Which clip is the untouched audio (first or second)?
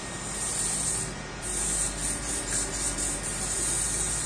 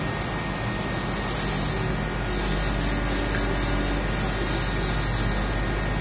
second